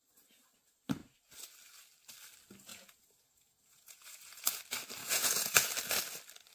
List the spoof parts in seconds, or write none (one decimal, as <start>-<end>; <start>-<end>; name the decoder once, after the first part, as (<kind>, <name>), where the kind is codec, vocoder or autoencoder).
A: 2.7-4.6 (vocoder, Vocos); 5.0-5.7